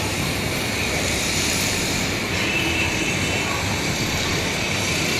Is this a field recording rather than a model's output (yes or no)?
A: no